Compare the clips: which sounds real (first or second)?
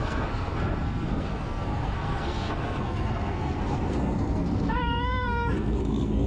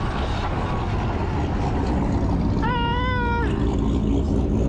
second